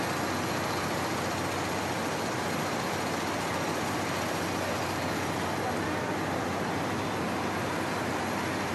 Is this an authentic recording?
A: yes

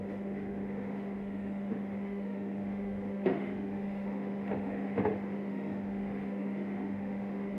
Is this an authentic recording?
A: no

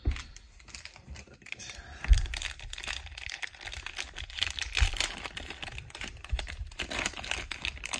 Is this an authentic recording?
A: no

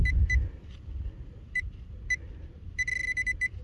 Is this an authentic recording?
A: yes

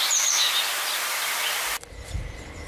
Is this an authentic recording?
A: yes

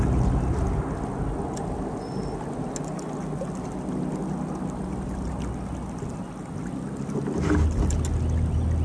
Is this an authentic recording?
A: yes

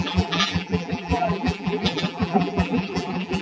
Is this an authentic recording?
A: no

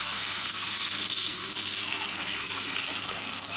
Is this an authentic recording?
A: no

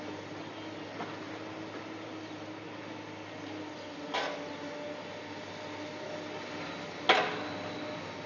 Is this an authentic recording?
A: yes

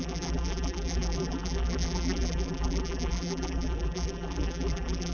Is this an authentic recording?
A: no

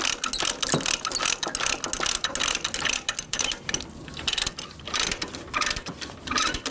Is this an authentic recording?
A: yes